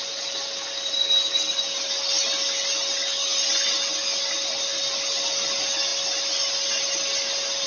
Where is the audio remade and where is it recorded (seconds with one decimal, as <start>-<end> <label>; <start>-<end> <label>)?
0.0-7.7 recorded